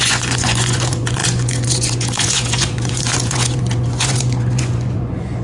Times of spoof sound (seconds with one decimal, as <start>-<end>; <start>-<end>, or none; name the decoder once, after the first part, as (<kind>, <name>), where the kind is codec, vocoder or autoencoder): 0.0-5.4 (vocoder, Vocos)